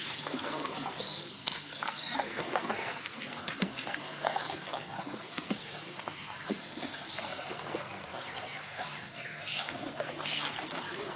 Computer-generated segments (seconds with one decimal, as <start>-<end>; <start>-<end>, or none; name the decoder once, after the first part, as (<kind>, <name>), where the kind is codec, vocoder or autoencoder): 0.0-11.2 (codec, SNAC)